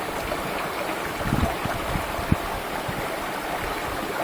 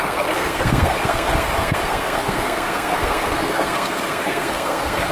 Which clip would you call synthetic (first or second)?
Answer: second